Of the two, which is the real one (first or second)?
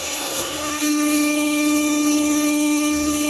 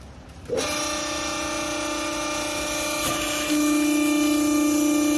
second